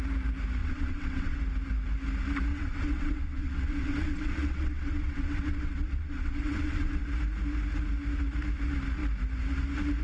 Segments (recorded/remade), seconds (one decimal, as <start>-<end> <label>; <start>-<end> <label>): 0.0-0.6 recorded; 0.6-1.4 remade; 1.4-2.5 recorded; 2.5-7.0 remade; 7.0-10.0 recorded